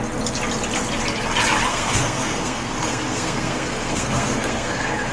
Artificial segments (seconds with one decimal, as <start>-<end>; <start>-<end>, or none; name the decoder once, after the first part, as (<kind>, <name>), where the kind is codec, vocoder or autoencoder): 1.7-5.1 (codec, SNAC)